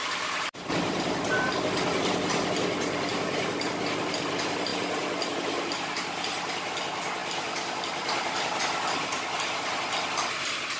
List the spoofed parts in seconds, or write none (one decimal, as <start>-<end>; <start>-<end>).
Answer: 0.0-2.5; 7.2-8.6